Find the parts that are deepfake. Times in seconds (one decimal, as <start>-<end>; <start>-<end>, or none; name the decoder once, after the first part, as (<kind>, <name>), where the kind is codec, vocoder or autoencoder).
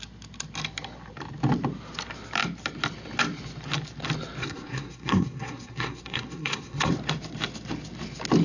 4.4-6.9 (codec, SNAC)